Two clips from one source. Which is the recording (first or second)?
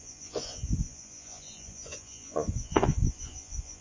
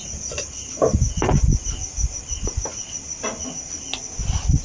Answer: second